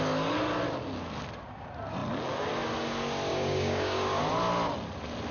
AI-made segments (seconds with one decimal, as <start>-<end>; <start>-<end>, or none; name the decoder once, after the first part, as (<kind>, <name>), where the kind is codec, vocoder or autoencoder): 3.3-4.2 (codec, DAC)